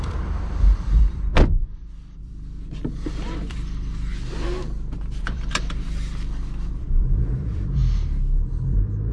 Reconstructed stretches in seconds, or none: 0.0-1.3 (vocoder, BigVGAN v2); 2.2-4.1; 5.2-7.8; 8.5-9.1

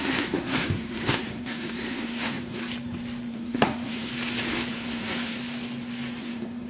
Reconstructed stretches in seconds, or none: 0.0-2.6 (codec, SNAC); 3.3-4.1; 4.7-5.4; 6.2-6.7

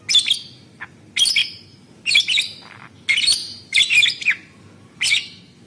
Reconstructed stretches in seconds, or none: 1.4-2.2 (vocoder, BigVGAN v2); 3.3-3.8

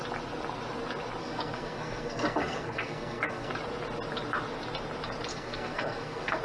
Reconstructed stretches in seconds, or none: 1.2-3.5 (codec, SNAC); 5.3-6.4